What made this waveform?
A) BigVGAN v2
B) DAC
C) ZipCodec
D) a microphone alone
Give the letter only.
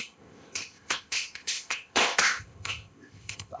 C